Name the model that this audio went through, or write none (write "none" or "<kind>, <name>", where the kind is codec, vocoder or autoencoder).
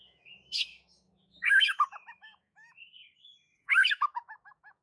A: autoencoder, DAC-VAE